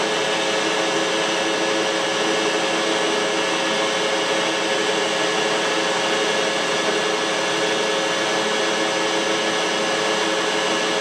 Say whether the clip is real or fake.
real